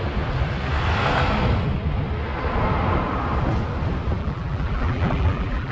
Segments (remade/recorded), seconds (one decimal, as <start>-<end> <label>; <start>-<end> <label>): 0.0-4.2 recorded; 4.2-5.7 remade